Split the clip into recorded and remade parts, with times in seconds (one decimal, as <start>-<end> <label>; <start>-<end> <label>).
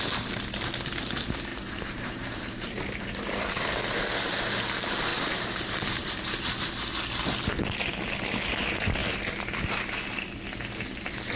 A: 0.0-1.5 recorded; 1.5-3.4 remade; 3.4-5.1 recorded; 5.1-6.6 remade; 6.6-11.4 recorded